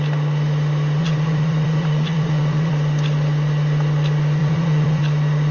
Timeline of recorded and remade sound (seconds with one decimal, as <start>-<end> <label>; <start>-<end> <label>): 0.0-1.0 recorded; 1.0-2.7 remade; 2.7-4.4 recorded; 4.4-5.0 remade; 5.0-5.5 recorded